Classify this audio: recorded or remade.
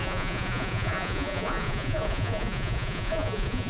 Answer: remade